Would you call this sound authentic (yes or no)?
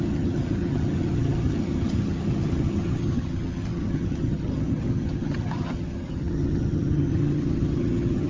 no